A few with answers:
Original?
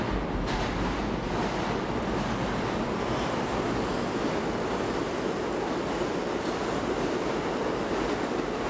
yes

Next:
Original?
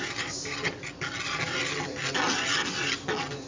yes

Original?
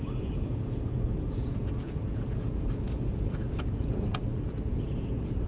no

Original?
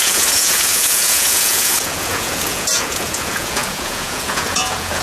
no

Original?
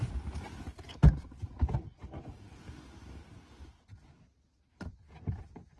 yes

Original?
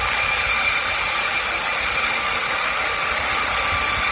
yes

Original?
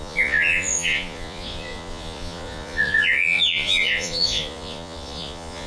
no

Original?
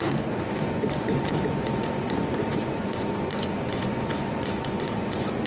no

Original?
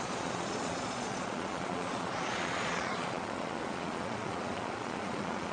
no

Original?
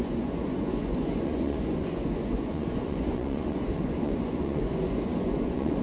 no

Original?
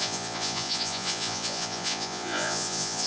no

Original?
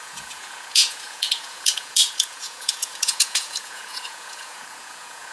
no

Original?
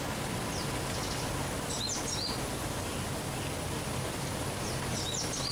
yes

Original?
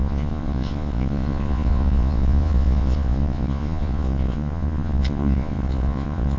no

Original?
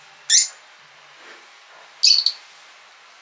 yes